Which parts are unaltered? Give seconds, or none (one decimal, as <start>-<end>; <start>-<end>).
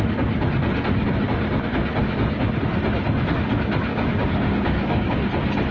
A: 0.0-2.0; 2.5-3.9; 5.1-5.7